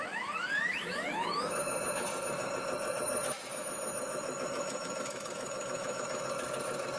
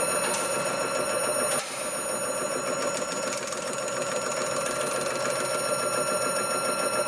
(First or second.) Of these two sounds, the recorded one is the second